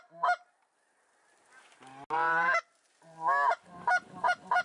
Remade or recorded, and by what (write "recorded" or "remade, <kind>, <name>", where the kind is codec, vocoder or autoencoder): recorded